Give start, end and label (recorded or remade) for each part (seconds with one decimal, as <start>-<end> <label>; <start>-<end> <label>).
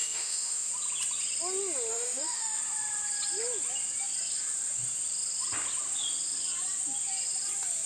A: 0.0-0.7 remade; 0.7-1.9 recorded; 1.9-2.6 remade; 2.6-7.9 recorded